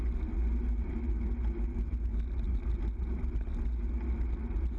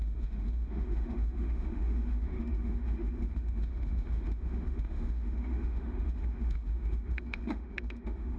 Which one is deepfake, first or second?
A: second